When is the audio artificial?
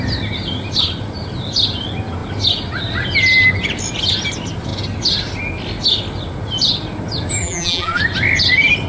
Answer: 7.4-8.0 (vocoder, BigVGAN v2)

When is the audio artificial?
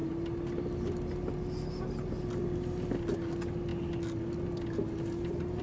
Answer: none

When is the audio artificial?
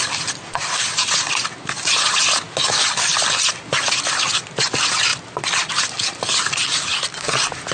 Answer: none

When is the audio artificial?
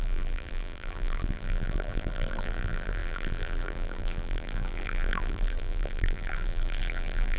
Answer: 0.0-7.4 (vocoder, BigVGAN v2)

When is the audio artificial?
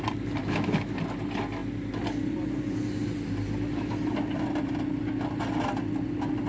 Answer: 0.4-1.0 (autoencoder, DAC-VAE)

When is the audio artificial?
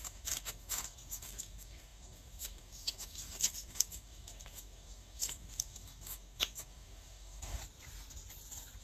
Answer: 0.0-7.6 (codec, DAC)